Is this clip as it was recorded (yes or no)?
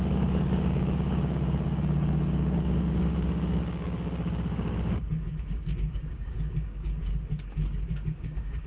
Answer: no